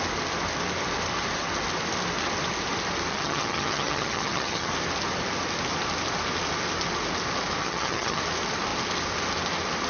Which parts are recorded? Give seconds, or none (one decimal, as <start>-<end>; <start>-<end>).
0.0-3.1; 4.7-7.6; 8.2-9.9